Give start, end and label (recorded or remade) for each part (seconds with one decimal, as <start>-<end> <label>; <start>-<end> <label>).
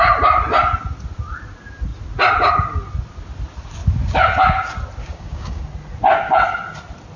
0.0-5.0 recorded; 5.0-5.6 remade; 5.6-7.2 recorded